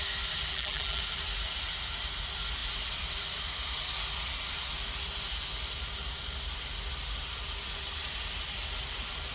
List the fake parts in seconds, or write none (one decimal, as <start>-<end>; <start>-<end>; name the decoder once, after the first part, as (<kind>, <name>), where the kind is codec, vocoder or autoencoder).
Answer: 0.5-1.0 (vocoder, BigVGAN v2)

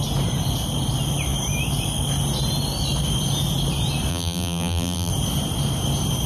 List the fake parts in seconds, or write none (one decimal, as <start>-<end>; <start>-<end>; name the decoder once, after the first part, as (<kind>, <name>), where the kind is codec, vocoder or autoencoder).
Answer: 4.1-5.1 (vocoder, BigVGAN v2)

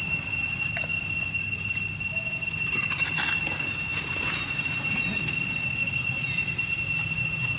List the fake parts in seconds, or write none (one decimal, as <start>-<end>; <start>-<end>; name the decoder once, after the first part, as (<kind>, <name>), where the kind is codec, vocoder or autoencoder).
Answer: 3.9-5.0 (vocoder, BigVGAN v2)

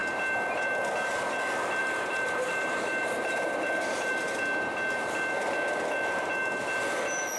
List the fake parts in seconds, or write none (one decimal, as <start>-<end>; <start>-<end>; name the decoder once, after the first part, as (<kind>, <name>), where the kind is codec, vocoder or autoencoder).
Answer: 1.8-4.2 (vocoder, BigVGAN v2)

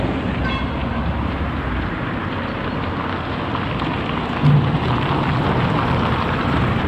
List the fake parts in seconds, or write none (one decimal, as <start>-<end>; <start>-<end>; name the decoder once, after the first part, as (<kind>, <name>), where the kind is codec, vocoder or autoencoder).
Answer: 0.0-2.2 (vocoder, BigVGAN v2); 5.4-6.9

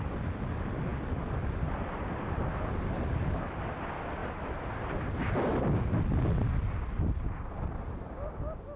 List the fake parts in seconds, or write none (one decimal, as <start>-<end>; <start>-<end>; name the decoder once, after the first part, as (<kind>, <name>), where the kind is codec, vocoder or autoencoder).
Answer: 0.9-3.8 (vocoder, BigVGAN v2); 4.2-5.0; 5.5-6.1